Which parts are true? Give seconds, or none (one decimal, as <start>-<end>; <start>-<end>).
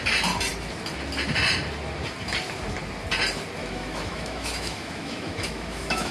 0.0-3.6